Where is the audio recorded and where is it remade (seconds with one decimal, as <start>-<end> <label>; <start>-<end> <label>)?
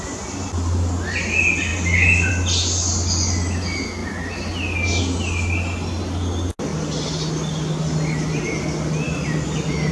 0.0-9.9 recorded